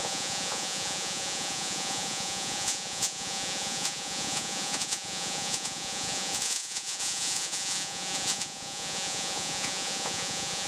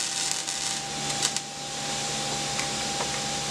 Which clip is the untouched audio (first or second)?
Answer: second